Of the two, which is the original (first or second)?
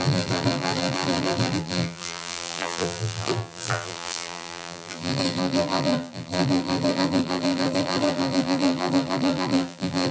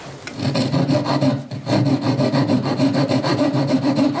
second